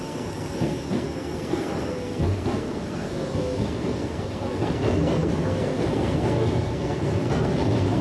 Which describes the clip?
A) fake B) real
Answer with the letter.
A